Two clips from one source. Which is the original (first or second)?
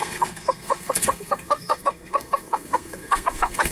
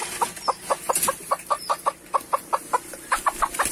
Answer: second